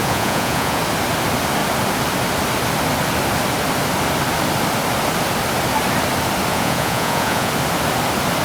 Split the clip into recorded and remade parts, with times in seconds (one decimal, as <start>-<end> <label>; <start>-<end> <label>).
0.0-0.8 remade; 0.8-6.5 recorded; 6.5-7.5 remade; 7.5-8.4 recorded